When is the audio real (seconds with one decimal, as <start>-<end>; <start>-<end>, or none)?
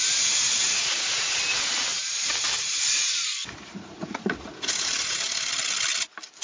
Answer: 0.0-0.6; 1.4-3.4; 5.5-6.4